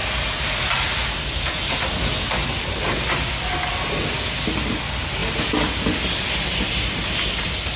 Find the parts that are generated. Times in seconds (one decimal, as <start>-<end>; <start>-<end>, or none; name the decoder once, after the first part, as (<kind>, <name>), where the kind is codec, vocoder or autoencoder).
none